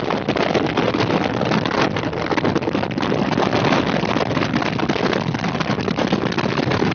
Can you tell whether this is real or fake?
real